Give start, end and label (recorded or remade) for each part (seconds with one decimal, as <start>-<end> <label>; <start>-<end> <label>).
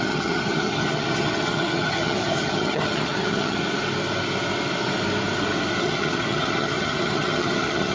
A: 0.0-3.6 remade; 3.6-5.8 recorded; 5.8-7.9 remade